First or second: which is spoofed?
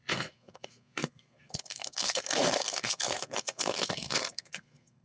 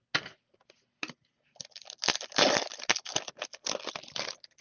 first